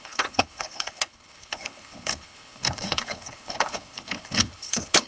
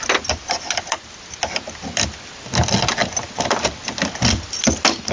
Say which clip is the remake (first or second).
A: first